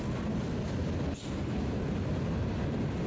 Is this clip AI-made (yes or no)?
no